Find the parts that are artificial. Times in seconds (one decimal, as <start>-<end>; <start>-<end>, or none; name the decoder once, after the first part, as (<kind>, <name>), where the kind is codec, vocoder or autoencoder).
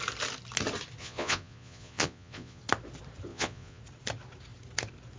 1.0-2.6 (vocoder, Vocos); 3.3-3.8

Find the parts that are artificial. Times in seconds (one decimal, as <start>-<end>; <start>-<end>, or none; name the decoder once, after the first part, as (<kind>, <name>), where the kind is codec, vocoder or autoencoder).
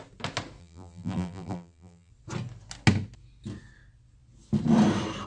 0.6-2.1 (vocoder, BigVGAN v2)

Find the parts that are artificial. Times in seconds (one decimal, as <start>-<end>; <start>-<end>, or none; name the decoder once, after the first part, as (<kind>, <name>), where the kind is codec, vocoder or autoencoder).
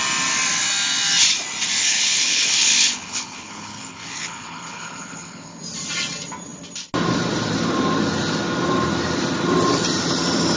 1.8-5.6 (codec, HILCodec)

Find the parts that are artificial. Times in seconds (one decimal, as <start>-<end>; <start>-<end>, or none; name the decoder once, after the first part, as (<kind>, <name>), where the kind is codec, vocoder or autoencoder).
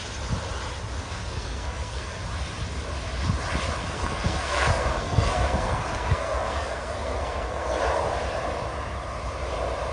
1.0-2.2 (codec, SNAC); 3.8-7.8